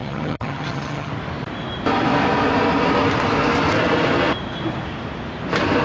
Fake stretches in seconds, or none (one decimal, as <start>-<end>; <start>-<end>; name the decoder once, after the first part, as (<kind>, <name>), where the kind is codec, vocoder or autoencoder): 0.0-1.1 (vocoder, HiFi-GAN)